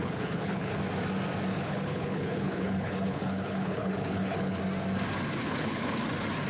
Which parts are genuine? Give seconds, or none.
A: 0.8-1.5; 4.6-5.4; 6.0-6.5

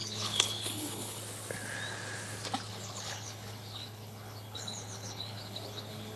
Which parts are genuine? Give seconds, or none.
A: 1.2-2.7

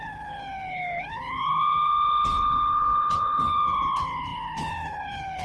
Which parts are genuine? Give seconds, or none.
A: none

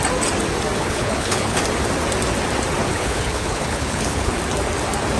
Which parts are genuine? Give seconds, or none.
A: 0.0-0.8; 1.6-2.9; 4.4-5.2

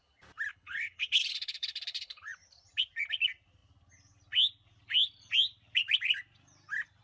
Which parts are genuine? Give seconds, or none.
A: 0.0-0.5; 2.3-7.0

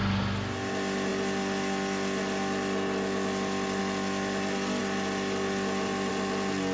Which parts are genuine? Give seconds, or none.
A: 0.0-6.7

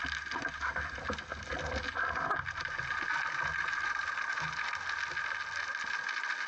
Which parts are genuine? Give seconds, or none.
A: 0.0-6.5